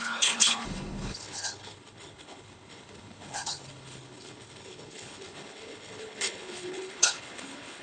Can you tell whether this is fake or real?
fake